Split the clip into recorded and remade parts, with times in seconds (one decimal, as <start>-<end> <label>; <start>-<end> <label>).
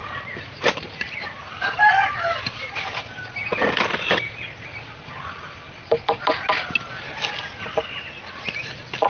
0.0-2.7 remade; 2.7-9.1 recorded